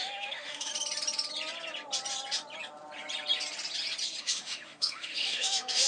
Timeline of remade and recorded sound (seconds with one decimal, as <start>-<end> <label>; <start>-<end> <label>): 0.0-0.7 remade; 0.7-4.2 recorded; 4.2-5.9 remade

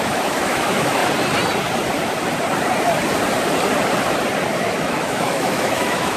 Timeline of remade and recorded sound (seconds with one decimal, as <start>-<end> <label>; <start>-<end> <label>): 0.0-1.0 remade; 1.0-4.6 recorded; 4.6-6.2 remade